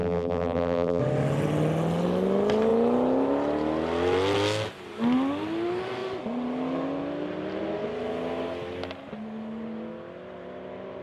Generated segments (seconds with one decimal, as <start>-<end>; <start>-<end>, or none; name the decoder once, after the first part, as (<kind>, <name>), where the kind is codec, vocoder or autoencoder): 0.0-1.0 (vocoder, BigVGAN v2)

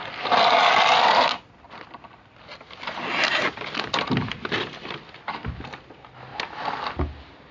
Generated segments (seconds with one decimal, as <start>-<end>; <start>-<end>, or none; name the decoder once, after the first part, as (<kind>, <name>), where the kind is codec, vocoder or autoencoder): none

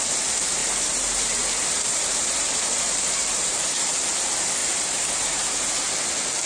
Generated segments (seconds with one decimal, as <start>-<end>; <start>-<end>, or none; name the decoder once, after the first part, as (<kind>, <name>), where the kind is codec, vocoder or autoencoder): 0.6-3.8 (vocoder, BigVGAN v2); 4.6-5.9